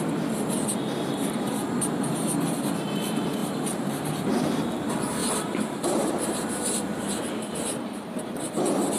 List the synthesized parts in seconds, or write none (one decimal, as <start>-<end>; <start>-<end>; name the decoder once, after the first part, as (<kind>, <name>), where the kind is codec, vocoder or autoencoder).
3.4-4.1 (vocoder, BigVGAN v2); 5.2-7.0